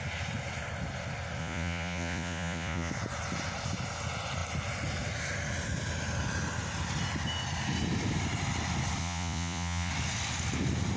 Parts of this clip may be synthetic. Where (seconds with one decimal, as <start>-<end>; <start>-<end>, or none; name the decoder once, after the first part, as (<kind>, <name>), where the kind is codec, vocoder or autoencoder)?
1.4-2.9 (vocoder, Vocos); 9.0-9.9